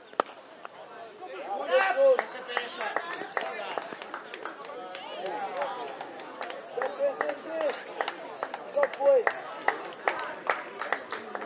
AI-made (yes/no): no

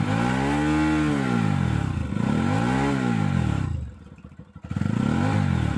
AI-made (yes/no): no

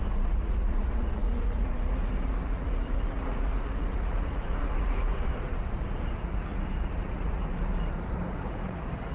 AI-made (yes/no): yes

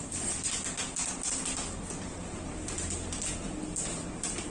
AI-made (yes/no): no